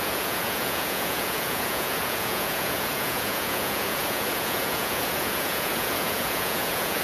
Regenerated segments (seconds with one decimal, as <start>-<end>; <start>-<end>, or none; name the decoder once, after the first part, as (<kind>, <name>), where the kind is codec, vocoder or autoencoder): 0.0-7.0 (vocoder, Vocos)